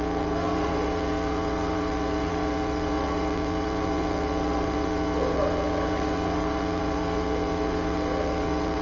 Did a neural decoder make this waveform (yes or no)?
yes